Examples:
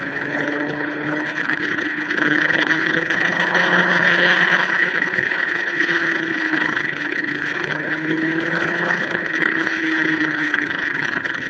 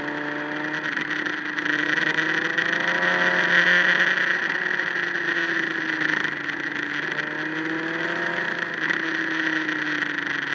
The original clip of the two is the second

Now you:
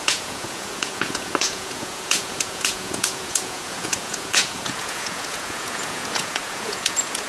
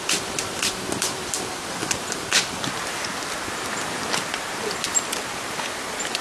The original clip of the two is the second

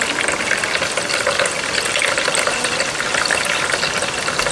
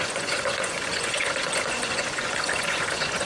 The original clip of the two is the first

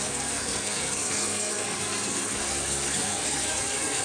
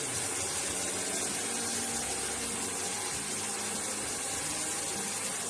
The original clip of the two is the second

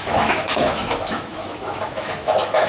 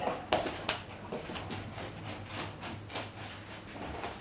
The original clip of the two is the second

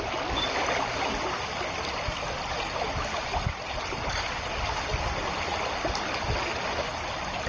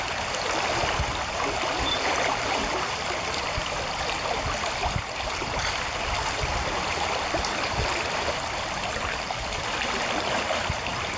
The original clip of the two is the first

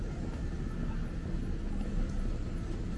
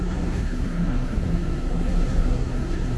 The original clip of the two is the first